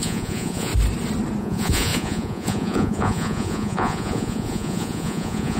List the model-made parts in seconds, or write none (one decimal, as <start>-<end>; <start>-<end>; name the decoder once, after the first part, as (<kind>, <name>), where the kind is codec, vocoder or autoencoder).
0.0-0.7 (vocoder, Vocos); 1.4-5.6